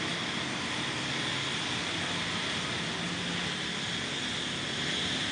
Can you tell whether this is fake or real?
real